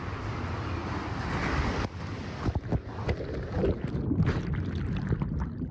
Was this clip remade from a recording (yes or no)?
no